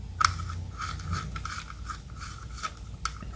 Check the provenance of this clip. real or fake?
real